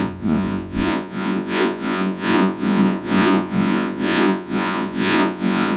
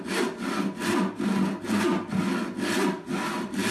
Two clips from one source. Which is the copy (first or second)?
first